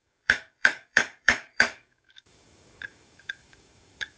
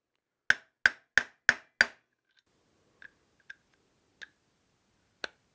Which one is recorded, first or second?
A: second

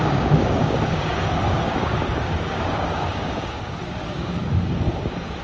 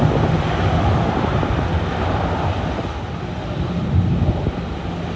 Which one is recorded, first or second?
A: second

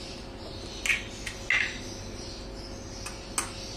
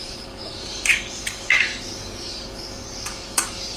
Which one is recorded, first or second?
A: first